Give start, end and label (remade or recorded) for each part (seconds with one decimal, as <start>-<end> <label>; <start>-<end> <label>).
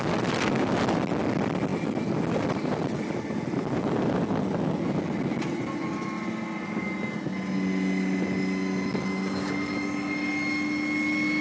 0.0-1.7 recorded; 1.7-3.4 remade; 3.4-11.4 recorded